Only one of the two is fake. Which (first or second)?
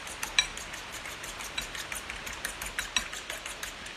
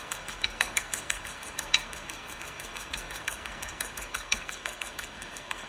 second